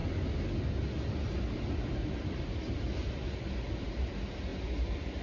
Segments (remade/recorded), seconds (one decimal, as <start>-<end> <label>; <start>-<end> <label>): 0.0-5.2 recorded